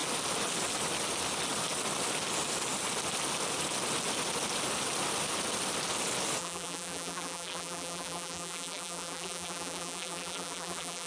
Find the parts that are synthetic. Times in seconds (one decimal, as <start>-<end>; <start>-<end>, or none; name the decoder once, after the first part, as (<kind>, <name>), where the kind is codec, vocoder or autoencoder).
6.4-11.1 (vocoder, BigVGAN v2)